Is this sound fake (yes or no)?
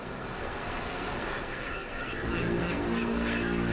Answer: yes